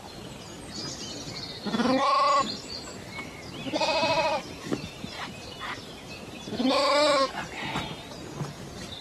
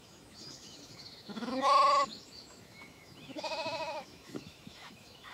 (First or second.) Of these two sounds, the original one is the first